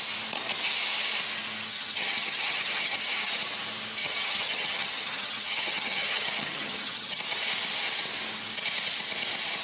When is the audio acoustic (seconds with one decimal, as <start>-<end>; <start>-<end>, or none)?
0.0-1.7; 3.3-4.0; 7.2-9.6